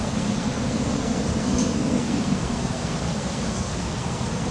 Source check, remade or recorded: remade